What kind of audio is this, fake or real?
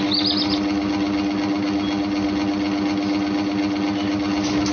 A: real